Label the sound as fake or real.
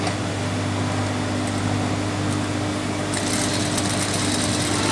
real